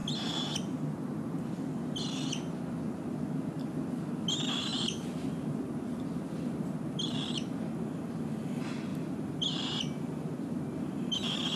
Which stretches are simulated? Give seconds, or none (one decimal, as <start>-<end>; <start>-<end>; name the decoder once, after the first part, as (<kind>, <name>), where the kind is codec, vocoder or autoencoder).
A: none